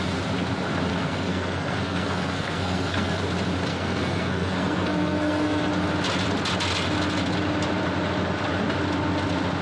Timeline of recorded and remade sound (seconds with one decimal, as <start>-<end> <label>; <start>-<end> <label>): 0.0-0.9 recorded; 0.9-3.2 remade; 3.2-3.7 recorded; 3.7-5.7 remade; 5.7-9.6 recorded